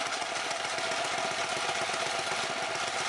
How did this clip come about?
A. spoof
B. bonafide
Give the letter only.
B